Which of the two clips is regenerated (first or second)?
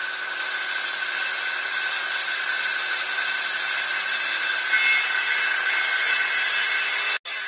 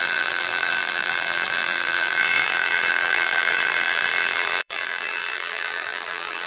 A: second